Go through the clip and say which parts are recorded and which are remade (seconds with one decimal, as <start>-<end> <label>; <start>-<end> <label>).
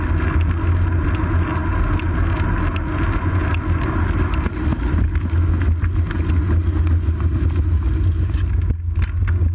0.0-9.5 recorded